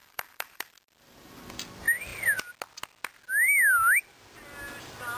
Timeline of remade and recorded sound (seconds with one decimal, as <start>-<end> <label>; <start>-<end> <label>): 0.0-1.5 remade; 1.5-5.2 recorded